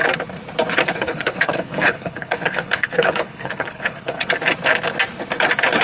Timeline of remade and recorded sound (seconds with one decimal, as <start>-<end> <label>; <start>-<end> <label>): 0.0-0.8 recorded; 0.8-4.3 remade; 4.3-5.8 recorded